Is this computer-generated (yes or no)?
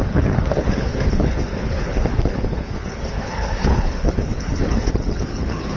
yes